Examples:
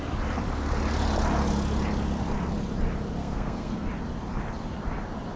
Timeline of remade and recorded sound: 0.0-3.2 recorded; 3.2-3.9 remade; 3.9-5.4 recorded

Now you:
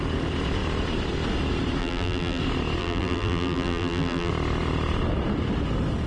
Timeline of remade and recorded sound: 0.0-1.8 recorded; 1.8-2.4 remade; 2.4-2.8 recorded; 2.8-4.3 remade; 4.3-6.1 recorded